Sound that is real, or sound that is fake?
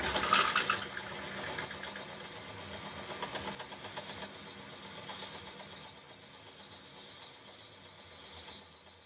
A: real